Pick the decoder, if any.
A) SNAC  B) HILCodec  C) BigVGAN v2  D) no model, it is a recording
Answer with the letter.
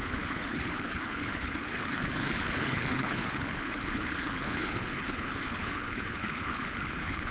B